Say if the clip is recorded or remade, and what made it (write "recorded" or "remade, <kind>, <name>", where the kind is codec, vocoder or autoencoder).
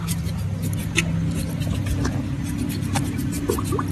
recorded